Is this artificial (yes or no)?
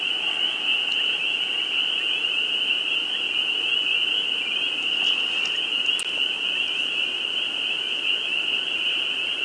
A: no